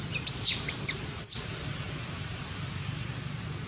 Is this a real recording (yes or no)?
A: no